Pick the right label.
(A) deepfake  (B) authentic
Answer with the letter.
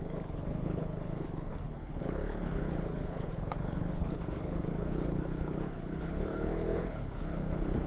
A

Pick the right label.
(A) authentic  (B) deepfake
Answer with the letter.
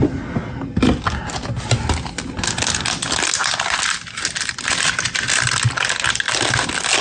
A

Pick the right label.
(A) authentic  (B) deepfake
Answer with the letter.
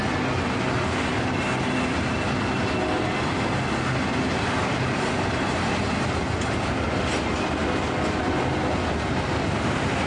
A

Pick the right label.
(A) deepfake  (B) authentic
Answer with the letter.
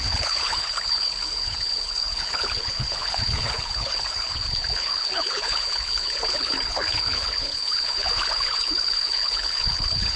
A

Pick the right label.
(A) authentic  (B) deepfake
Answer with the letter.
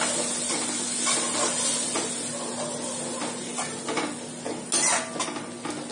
A